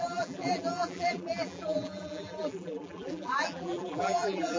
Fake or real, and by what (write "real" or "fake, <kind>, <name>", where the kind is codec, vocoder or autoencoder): fake, vocoder, BigVGAN v2